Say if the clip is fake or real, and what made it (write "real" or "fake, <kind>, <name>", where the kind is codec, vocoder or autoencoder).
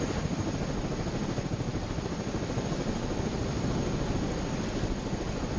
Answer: fake, vocoder, BigVGAN v2